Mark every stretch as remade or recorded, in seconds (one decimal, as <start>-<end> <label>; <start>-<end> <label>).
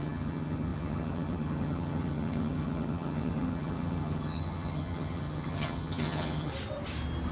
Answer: 0.0-6.5 remade; 6.5-7.3 recorded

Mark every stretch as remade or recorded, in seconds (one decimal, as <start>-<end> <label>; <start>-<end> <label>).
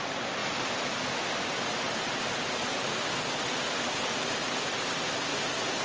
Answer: 0.0-5.8 recorded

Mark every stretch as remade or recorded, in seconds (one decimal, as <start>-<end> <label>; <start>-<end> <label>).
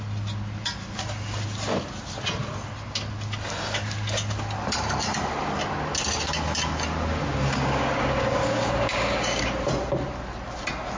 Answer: 0.0-7.1 recorded; 7.1-9.4 remade; 9.4-11.0 recorded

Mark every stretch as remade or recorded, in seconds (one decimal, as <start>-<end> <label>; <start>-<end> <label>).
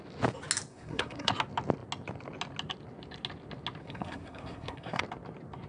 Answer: 0.0-0.7 recorded; 0.7-1.3 remade; 1.3-3.8 recorded; 3.8-5.0 remade; 5.0-5.7 recorded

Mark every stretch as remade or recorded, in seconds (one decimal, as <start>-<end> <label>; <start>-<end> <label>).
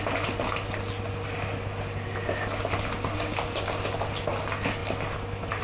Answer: 0.0-5.6 recorded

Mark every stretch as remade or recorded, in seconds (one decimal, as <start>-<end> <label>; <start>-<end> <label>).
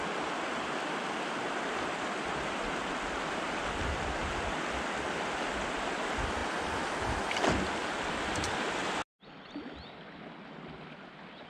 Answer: 0.0-11.5 recorded